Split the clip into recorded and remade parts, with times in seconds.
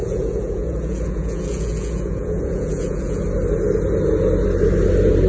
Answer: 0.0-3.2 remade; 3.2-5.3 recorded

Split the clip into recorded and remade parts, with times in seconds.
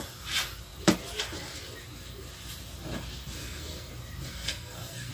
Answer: 0.0-3.4 recorded; 3.4-3.9 remade; 3.9-4.3 recorded; 4.3-5.1 remade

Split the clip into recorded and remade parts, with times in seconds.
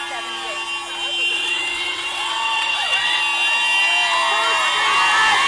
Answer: 0.0-1.3 recorded; 1.3-3.2 remade; 3.2-5.5 recorded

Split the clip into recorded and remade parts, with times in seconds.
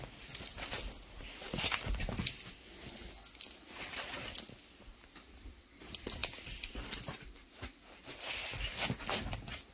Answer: 0.0-9.7 recorded